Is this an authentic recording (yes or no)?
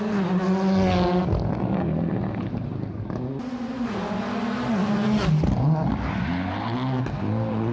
yes